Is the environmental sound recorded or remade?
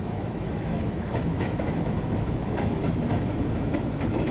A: remade